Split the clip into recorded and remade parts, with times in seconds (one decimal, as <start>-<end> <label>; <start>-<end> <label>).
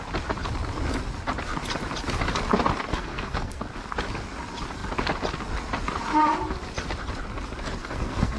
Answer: 0.0-2.9 recorded; 2.9-3.6 remade; 3.6-7.8 recorded; 7.8-8.4 remade